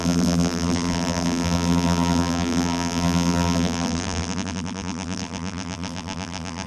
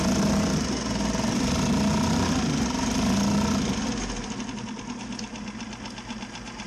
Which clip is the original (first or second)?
second